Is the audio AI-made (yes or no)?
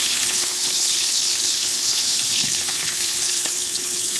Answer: yes